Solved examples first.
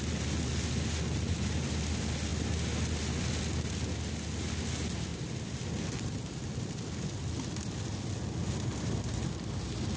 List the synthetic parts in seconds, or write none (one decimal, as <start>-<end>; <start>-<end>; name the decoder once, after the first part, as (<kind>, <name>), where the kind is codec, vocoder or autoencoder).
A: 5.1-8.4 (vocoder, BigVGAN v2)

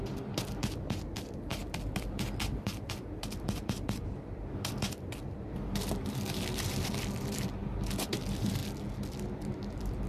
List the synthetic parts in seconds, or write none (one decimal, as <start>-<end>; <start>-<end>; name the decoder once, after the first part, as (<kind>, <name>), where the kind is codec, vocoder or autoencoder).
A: 0.0-7.6 (vocoder, BigVGAN v2); 8.1-8.6; 9.3-10.1

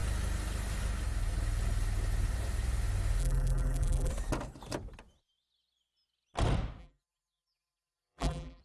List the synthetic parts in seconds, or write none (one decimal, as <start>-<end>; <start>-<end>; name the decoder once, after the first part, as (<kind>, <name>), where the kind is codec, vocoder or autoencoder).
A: 3.2-4.1 (vocoder, BigVGAN v2); 6.8-8.6

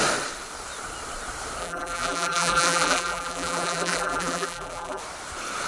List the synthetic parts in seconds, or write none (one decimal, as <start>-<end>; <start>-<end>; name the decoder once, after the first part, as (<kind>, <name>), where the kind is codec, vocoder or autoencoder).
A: 1.6-5.0 (vocoder, BigVGAN v2)

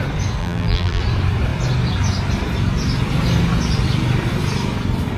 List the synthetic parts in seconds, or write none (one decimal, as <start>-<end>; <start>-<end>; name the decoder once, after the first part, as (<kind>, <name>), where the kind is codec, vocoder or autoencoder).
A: 0.4-1.0 (vocoder, BigVGAN v2)

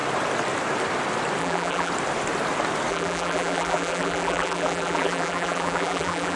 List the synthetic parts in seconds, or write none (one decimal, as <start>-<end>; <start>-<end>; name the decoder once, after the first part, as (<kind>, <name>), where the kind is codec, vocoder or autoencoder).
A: 1.4-1.9 (vocoder, BigVGAN v2); 2.9-6.4